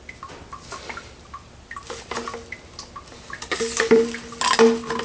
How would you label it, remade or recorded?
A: recorded